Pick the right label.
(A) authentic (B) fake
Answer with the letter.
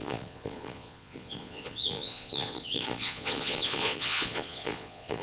B